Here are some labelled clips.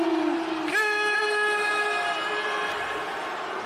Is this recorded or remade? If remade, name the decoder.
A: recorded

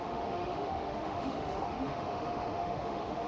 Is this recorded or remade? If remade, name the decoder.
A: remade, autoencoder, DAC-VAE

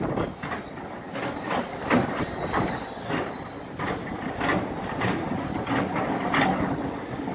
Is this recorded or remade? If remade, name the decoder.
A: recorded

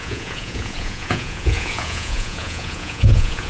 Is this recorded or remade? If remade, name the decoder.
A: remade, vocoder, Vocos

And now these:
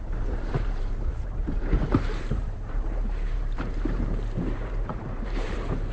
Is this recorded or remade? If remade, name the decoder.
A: remade, vocoder, BigVGAN v2